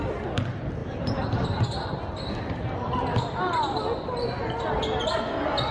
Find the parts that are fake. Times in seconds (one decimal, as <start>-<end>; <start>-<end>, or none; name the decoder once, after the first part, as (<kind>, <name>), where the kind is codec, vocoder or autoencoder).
0.8-2.0 (vocoder, BigVGAN v2)